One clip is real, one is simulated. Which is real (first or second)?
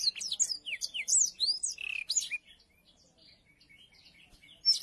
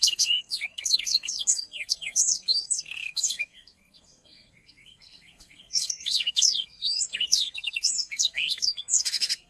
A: first